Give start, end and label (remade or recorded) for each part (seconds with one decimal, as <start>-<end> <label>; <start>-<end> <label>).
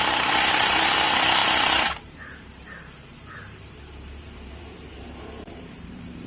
0.0-6.3 remade